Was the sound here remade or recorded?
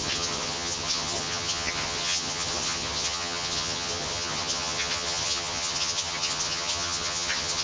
remade